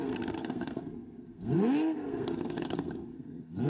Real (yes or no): no